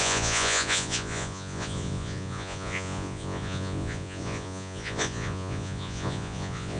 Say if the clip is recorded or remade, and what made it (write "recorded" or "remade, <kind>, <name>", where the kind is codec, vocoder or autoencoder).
remade, vocoder, Vocos